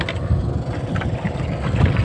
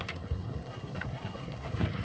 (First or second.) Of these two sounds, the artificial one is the second